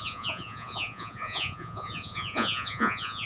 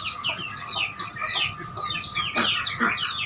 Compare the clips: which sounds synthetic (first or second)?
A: first